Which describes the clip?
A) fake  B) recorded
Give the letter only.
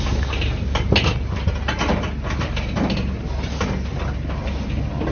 B